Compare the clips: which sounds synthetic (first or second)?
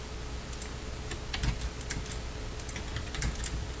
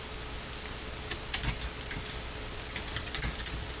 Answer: second